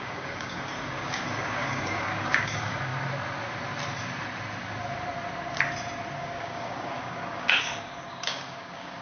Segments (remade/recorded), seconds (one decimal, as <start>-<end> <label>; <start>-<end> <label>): 0.0-2.9 remade; 2.9-6.2 recorded; 6.2-9.0 remade